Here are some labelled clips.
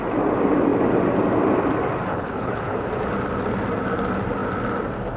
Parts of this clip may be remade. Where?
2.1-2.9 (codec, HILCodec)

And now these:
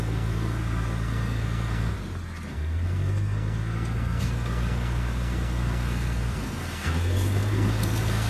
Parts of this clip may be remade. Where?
0.0-1.9 (codec, SNAC); 2.5-8.3

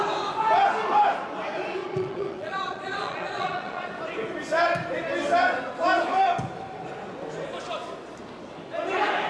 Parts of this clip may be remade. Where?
1.8-3.9 (vocoder, Vocos)

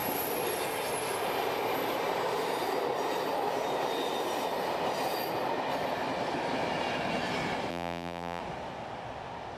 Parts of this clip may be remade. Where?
7.7-8.4 (vocoder, BigVGAN v2)

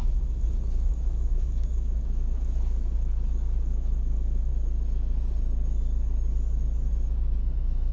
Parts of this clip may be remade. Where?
0.0-4.5 (autoencoder, DAC-VAE); 7.4-7.9

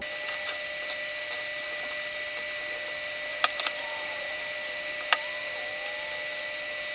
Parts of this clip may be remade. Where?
3.3-4.4 (vocoder, BigVGAN v2)

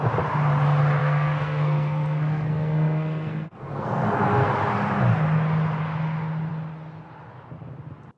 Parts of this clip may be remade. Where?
1.0-4.5 (codec, SNAC)